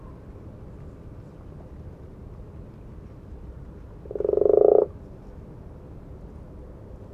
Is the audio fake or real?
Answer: real